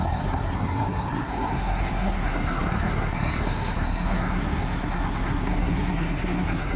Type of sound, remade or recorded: remade